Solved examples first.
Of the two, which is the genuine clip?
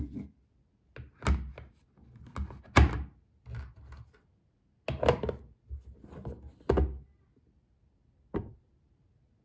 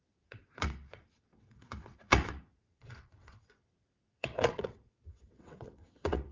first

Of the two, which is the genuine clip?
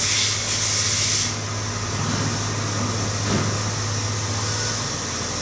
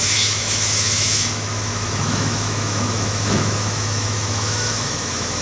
first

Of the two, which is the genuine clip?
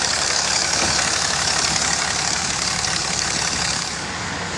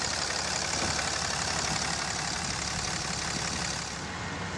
second